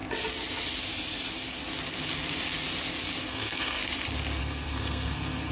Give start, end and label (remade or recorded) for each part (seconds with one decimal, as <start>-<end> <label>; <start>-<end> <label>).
0.0-3.3 recorded; 3.3-3.8 remade; 3.8-4.4 recorded; 4.4-5.5 remade